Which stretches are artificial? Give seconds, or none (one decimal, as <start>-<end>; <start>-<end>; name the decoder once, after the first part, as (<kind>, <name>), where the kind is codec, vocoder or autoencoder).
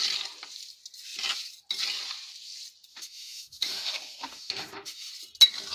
2.9-5.1 (autoencoder, DAC-VAE)